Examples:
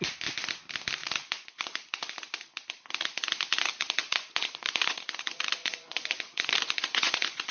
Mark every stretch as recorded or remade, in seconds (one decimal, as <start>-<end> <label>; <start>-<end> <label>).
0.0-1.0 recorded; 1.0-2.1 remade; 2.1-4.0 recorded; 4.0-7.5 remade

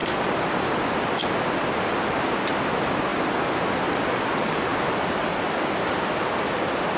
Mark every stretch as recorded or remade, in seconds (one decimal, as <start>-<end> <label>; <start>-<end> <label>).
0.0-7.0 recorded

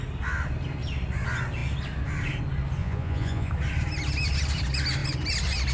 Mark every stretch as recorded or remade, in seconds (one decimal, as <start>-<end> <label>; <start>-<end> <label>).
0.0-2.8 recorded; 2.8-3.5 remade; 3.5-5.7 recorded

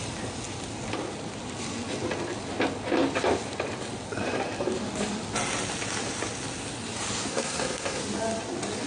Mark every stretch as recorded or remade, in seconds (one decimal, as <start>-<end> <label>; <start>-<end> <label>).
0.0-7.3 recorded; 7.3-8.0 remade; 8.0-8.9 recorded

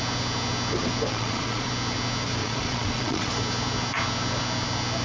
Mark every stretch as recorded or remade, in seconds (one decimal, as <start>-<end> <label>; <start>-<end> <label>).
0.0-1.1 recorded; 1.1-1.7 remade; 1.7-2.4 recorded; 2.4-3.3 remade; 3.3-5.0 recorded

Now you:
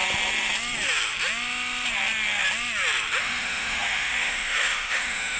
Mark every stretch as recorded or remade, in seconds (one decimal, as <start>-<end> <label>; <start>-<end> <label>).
0.0-3.2 recorded; 3.2-5.4 remade

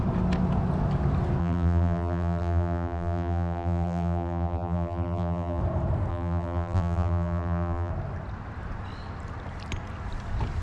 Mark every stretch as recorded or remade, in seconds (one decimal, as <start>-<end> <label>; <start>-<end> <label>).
0.0-1.4 recorded; 1.4-5.6 remade; 5.6-6.1 recorded; 6.1-7.9 remade; 7.9-10.6 recorded

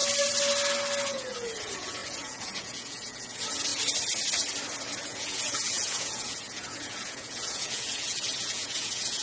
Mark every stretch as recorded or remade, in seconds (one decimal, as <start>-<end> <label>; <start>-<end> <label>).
0.0-1.0 recorded; 1.0-3.7 remade; 3.7-5.0 recorded; 5.0-9.2 remade